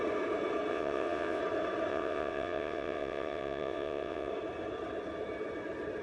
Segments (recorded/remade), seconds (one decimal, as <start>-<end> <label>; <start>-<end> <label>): 0.0-0.7 recorded; 0.7-1.4 remade; 1.4-1.9 recorded; 1.9-4.3 remade; 4.3-6.0 recorded